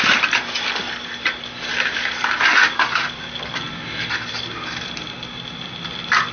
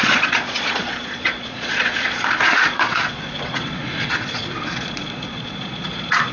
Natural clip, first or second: first